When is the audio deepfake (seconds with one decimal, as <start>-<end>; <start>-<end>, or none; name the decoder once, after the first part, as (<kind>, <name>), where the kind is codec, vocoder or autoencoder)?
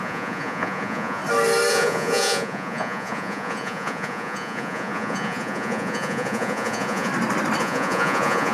0.0-1.2 (vocoder, Vocos); 1.7-7.1; 7.6-8.5